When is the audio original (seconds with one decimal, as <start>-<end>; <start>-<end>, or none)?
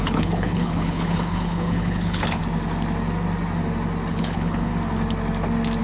2.4-4.1; 4.7-5.8